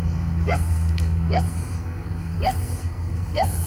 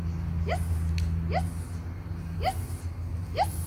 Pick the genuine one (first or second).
second